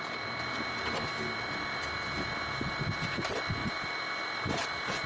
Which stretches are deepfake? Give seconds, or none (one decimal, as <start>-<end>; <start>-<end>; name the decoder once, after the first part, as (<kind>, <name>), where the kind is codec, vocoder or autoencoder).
none